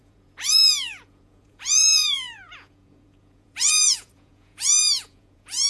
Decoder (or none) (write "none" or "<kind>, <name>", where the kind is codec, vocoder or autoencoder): vocoder, Vocos